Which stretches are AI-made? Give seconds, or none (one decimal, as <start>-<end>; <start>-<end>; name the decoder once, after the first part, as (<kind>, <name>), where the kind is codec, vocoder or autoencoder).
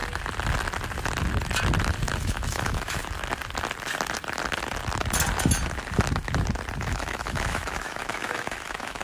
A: 2.2-3.0 (autoencoder, DAC-VAE); 6.8-9.0